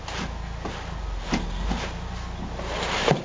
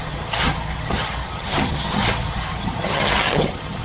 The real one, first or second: first